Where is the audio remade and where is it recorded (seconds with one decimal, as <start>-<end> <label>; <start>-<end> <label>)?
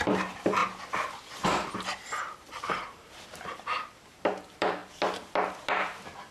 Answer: 0.0-0.6 remade; 0.6-2.2 recorded; 2.2-4.8 remade; 4.8-5.6 recorded; 5.6-6.3 remade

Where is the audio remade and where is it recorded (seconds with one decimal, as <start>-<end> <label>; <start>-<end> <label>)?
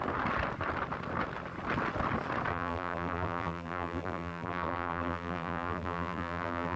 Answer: 0.0-2.5 recorded; 2.5-6.8 remade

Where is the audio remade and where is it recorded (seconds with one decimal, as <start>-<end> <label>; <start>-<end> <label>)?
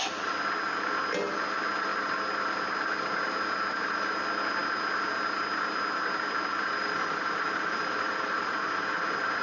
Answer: 0.0-6.8 recorded; 6.8-8.5 remade; 8.5-9.4 recorded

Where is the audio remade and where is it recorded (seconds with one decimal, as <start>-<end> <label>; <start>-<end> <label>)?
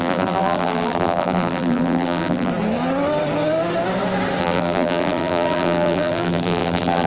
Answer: 0.0-2.5 remade; 2.5-4.4 recorded; 4.4-7.1 remade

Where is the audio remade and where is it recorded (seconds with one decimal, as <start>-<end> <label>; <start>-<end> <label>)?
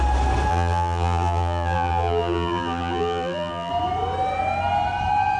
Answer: 0.0-0.5 recorded; 0.5-3.7 remade; 3.7-5.4 recorded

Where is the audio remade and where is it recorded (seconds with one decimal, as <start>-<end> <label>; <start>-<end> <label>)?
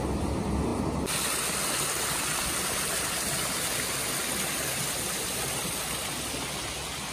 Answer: 0.0-7.1 recorded